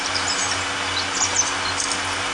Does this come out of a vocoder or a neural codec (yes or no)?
no